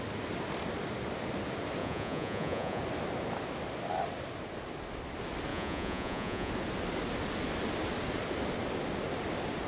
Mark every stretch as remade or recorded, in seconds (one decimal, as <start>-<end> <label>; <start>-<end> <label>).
0.0-1.8 recorded; 1.8-2.8 remade; 2.8-5.5 recorded; 5.5-6.5 remade; 6.5-9.7 recorded